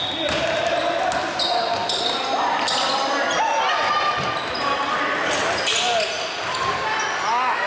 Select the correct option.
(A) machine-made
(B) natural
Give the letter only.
B